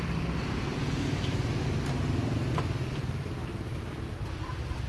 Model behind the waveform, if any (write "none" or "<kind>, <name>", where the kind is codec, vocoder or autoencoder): none